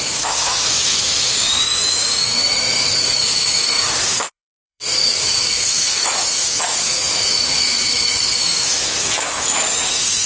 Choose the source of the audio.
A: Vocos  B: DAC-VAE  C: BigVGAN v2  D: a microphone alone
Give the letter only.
B